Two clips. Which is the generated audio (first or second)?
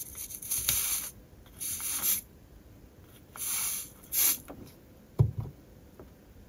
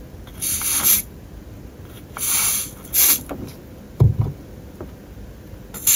first